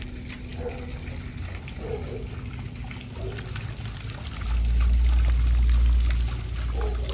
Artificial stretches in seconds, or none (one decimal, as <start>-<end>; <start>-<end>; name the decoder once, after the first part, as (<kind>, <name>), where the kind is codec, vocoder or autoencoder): none

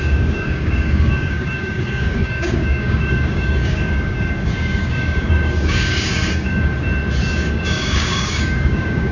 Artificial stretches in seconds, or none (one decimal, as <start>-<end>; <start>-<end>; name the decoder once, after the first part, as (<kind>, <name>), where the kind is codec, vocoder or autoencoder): 0.0-6.7 (codec, DAC); 7.3-9.1

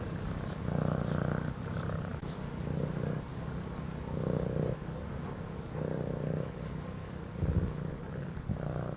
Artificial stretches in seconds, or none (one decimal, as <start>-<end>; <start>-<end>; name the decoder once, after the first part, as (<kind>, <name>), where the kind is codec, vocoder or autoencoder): 0.0-9.0 (codec, DAC)

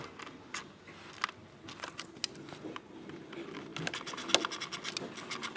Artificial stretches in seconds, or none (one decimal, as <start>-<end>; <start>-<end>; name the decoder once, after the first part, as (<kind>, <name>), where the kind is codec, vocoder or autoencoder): none